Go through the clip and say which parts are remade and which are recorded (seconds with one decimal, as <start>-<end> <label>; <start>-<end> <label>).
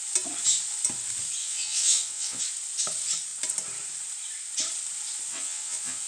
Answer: 0.0-1.4 recorded; 1.4-2.4 remade; 2.4-5.3 recorded; 5.3-6.1 remade